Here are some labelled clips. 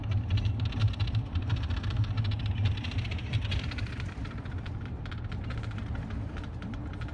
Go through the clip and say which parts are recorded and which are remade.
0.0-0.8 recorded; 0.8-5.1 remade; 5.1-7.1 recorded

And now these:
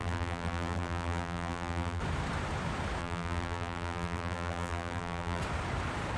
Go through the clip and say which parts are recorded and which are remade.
0.0-2.0 remade; 2.0-3.0 recorded; 3.0-5.4 remade; 5.4-6.2 recorded